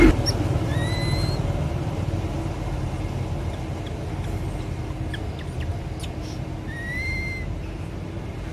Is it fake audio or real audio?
real